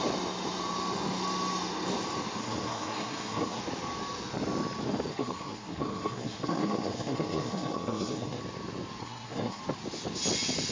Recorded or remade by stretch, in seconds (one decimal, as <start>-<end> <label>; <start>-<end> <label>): 0.0-2.4 recorded; 2.4-3.6 remade; 3.6-5.1 recorded; 5.1-8.4 remade; 8.4-9.0 recorded; 9.0-9.6 remade; 9.6-10.7 recorded